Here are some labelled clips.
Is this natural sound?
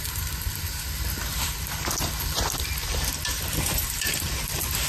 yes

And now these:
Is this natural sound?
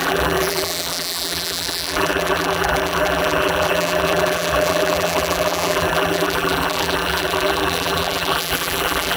no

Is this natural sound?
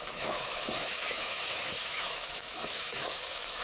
no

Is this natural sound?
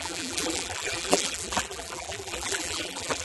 no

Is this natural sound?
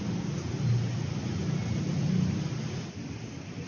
yes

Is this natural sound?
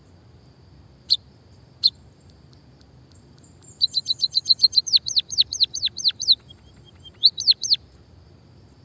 no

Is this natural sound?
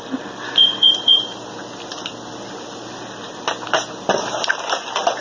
yes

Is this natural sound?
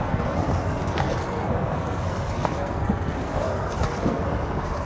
no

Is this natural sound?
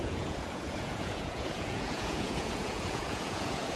no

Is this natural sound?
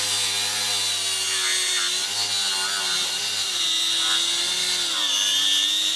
yes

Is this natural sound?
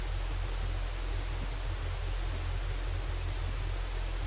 yes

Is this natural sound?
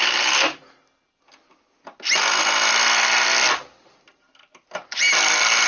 yes